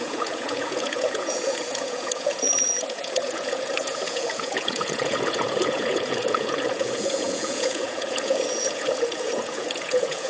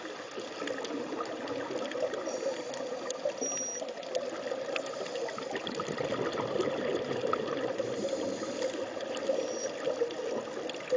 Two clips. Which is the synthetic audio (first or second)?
first